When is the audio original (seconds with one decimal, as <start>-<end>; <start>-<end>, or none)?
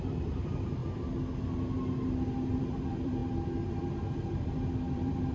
0.8-2.6; 3.2-3.8